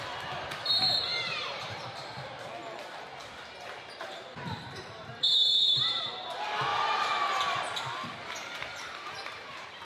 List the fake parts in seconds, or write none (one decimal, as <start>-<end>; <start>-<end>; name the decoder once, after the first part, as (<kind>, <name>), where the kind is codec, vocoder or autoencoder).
1.1-2.3 (vocoder, BigVGAN v2); 3.2-6.0; 6.7-7.6; 8.7-9.8